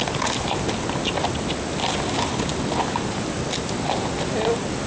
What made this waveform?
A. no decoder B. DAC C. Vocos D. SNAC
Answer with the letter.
A